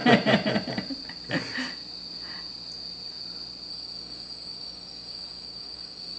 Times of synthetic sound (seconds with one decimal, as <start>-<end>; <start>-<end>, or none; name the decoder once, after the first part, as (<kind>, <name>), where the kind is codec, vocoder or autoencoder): 3.7-6.2 (codec, DAC)